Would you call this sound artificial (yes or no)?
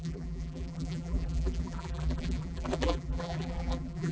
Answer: yes